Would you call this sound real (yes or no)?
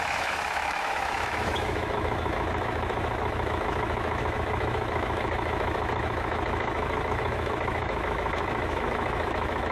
no